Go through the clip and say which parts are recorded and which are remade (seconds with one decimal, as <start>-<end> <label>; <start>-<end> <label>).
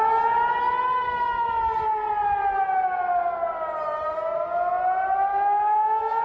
0.0-5.3 recorded; 5.3-6.2 remade